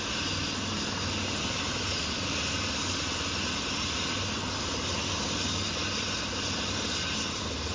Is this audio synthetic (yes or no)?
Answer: no